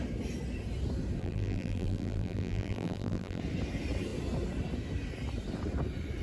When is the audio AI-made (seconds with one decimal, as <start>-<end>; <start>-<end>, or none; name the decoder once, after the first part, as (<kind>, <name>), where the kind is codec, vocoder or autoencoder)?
1.2-3.4 (vocoder, BigVGAN v2)